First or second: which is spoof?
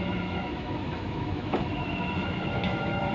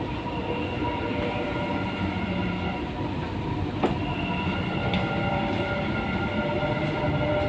first